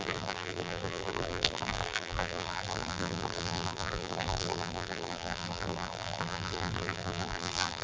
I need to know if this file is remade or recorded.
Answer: remade